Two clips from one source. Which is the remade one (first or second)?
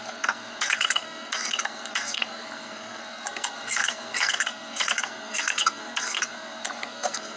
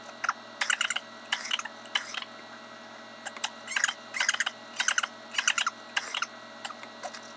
first